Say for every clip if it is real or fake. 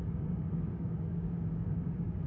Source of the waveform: fake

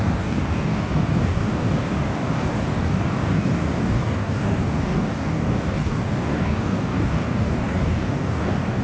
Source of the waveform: fake